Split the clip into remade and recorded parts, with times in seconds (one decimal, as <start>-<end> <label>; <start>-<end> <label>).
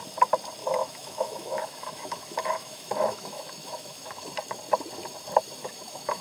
0.0-0.6 recorded; 0.6-4.3 remade; 4.3-5.6 recorded; 5.6-6.2 remade